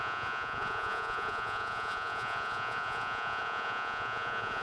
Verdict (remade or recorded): remade